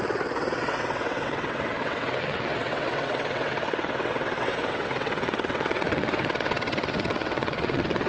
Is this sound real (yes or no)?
no